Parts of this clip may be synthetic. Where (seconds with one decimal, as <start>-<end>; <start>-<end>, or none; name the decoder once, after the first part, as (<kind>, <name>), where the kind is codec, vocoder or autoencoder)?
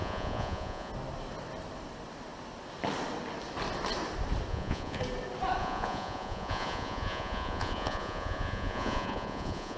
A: 0.0-0.9 (vocoder, Vocos); 4.5-5.0; 5.6-9.8